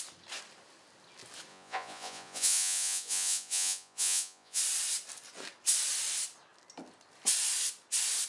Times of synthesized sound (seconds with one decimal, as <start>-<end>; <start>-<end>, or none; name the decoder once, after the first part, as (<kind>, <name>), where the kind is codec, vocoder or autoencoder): 1.5-4.6 (vocoder, Vocos)